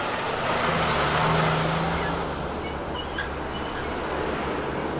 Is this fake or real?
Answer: real